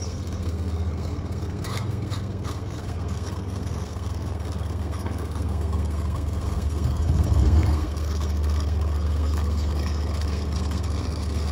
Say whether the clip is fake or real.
fake